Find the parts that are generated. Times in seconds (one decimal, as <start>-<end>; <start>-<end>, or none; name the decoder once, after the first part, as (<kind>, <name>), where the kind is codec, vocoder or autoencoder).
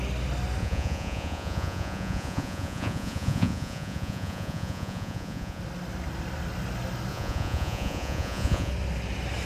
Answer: 0.6-5.6 (vocoder, Vocos); 7.1-8.7